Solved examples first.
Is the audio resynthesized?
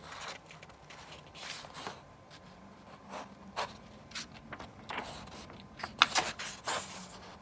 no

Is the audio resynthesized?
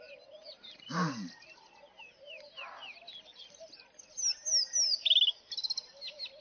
no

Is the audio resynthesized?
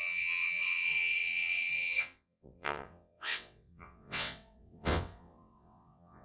yes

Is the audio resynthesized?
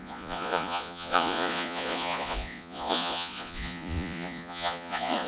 yes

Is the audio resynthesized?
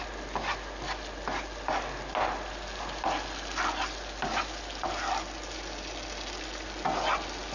no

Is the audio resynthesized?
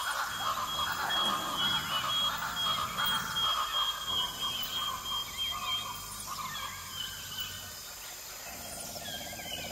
no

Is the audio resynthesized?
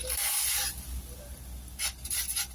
no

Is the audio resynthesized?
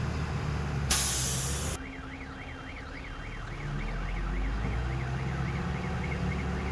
no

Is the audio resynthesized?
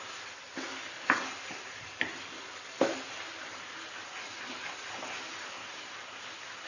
no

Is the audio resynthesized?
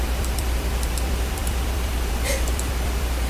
yes